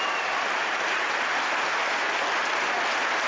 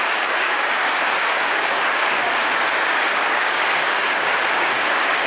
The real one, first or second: first